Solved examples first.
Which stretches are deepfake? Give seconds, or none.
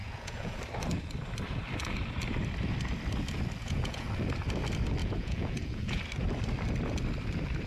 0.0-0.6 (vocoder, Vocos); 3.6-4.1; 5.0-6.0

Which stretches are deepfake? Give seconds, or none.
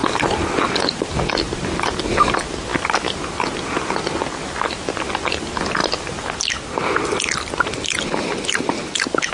none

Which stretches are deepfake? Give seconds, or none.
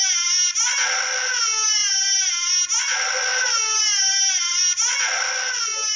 none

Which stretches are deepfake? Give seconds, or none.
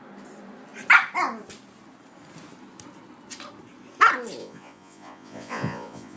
4.4-6.2 (vocoder, Vocos)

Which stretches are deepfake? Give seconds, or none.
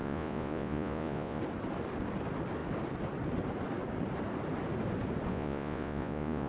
0.0-1.4 (vocoder, Vocos); 5.3-6.5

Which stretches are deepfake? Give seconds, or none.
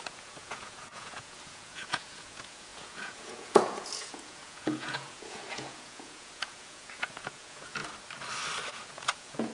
0.0-7.8 (vocoder, Vocos); 8.7-9.5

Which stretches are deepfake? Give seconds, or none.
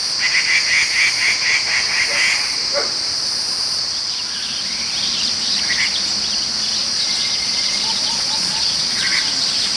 6.8-9.2 (vocoder, Vocos)